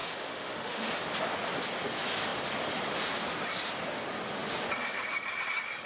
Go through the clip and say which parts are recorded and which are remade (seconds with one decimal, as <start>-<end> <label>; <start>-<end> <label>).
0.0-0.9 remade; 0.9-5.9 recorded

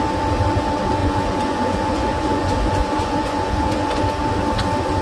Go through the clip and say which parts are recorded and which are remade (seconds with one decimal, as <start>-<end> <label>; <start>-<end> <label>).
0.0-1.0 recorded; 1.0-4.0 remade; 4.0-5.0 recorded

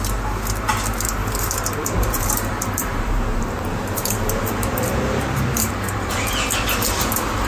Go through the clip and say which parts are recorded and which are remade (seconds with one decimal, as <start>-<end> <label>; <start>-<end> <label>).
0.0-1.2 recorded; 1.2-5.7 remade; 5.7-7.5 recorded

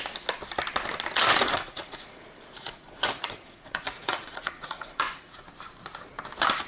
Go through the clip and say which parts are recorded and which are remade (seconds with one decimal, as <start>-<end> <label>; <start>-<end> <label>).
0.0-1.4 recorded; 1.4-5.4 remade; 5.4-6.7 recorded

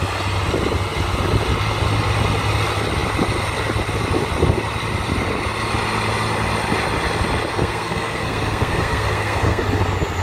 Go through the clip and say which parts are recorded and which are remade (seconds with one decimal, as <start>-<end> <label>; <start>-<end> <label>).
0.0-7.5 recorded; 7.5-9.6 remade; 9.6-10.2 recorded